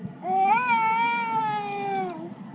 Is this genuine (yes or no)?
yes